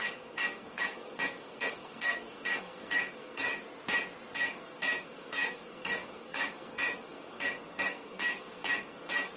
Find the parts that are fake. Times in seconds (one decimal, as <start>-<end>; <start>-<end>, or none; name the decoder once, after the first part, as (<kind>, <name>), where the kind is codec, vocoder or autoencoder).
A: 0.0-3.5 (codec, SNAC); 4.3-9.4